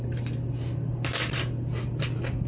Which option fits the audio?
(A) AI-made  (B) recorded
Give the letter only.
B